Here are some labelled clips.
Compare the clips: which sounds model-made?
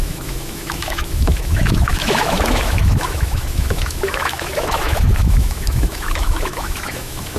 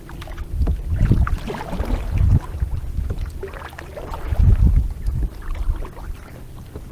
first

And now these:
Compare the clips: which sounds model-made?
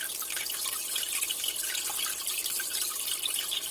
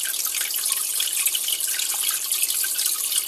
first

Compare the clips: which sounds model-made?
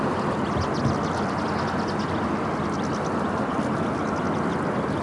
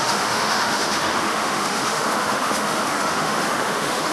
second